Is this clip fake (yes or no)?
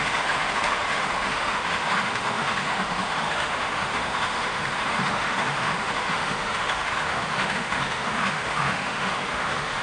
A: yes